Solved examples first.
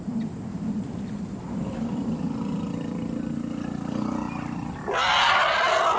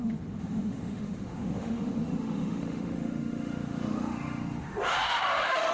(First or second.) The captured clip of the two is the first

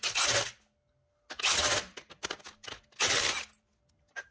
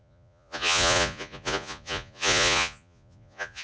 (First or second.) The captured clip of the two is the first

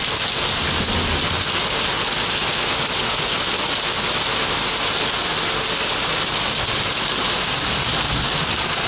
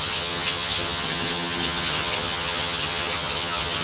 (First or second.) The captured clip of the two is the first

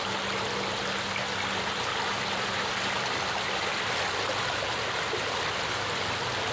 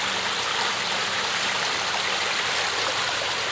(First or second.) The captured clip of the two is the first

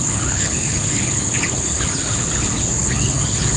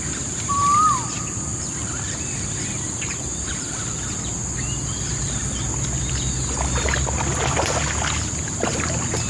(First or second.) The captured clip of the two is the second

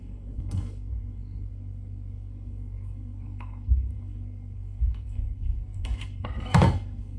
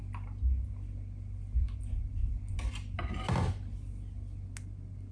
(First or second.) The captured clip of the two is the second